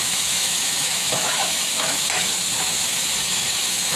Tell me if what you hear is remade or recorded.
remade